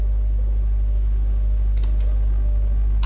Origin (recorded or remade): recorded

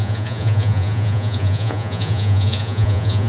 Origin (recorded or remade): remade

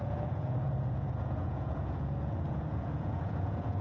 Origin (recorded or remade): remade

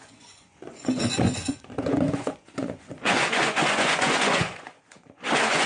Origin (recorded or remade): remade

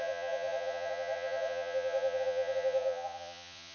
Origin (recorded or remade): remade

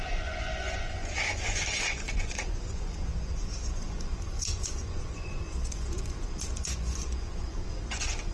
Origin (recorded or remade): remade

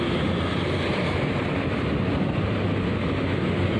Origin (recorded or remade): recorded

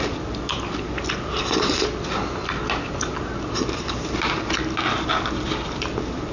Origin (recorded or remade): recorded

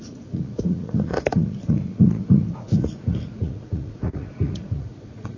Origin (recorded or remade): remade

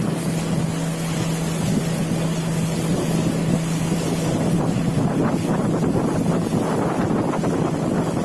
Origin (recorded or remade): recorded